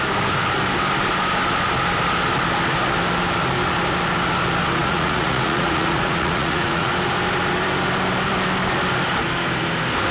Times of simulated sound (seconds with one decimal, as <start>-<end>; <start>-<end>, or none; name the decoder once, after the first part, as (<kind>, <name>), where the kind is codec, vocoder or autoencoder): 4.8-6.9 (vocoder, Vocos)